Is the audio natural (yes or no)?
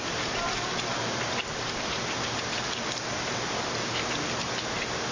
yes